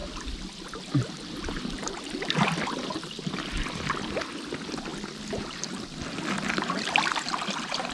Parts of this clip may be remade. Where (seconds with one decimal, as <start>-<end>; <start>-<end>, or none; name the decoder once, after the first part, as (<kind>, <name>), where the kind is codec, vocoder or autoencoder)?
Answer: none